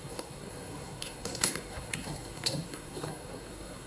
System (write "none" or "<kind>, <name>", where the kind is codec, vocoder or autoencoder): codec, SNAC